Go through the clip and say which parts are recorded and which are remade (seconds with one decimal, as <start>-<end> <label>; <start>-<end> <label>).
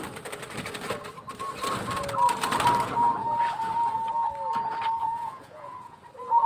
0.0-5.0 recorded; 5.0-6.0 remade; 6.0-6.5 recorded